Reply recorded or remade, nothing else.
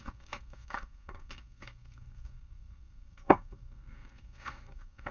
remade